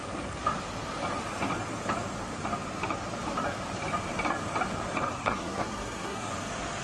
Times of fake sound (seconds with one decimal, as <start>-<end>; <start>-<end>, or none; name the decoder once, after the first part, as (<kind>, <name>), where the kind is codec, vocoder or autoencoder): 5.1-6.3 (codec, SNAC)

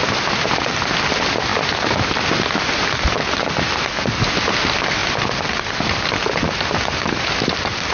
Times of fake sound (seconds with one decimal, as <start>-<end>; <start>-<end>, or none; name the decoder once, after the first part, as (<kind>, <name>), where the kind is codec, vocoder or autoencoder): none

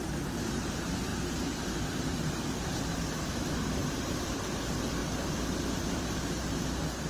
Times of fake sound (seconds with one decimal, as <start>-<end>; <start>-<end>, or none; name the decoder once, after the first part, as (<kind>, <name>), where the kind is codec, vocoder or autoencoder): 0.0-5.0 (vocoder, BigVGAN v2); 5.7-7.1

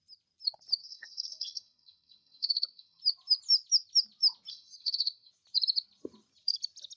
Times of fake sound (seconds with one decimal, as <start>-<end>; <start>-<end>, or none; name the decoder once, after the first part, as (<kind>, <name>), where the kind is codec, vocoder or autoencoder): 0.8-3.0 (codec, SNAC); 4.5-5.3

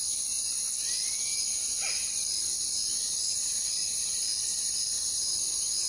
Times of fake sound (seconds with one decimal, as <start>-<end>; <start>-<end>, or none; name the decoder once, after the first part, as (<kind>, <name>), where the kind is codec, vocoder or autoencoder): none

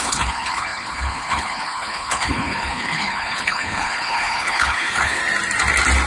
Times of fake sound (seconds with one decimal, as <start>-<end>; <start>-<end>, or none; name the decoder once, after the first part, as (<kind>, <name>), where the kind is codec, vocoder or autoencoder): 0.0-5.2 (codec, HILCodec)

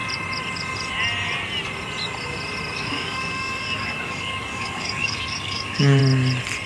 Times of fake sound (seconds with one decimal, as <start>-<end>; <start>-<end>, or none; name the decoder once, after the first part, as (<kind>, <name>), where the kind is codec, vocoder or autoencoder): 2.8-6.0 (codec, DAC)